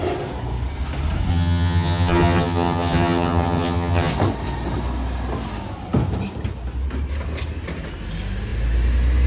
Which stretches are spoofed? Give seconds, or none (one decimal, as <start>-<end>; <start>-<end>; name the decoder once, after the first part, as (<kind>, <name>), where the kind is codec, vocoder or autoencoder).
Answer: 1.3-4.1 (vocoder, HiFi-GAN)